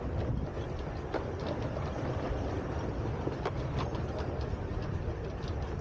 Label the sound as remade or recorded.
recorded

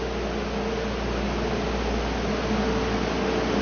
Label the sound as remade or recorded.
recorded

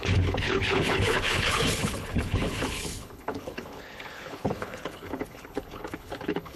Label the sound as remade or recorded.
remade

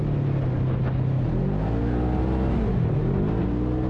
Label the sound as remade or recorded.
recorded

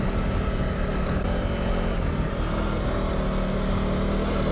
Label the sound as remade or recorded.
recorded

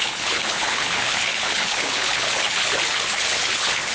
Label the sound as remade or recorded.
remade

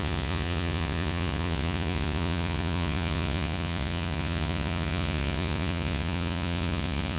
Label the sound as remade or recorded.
remade